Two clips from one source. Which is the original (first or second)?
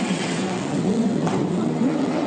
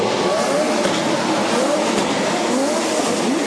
second